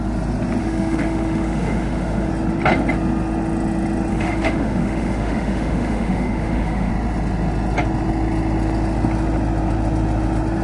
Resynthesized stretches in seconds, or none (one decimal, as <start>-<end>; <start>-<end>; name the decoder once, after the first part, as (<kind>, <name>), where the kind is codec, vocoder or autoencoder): 0.6-2.3 (autoencoder, DAC-VAE); 4.1-6.9